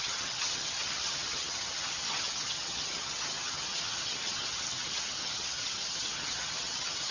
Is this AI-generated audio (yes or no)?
yes